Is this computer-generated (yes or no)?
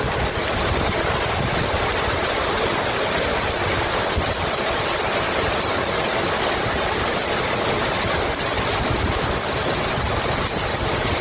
no